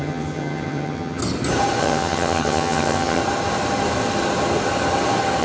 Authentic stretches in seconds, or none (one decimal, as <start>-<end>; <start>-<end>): 1.2-1.8; 3.2-5.4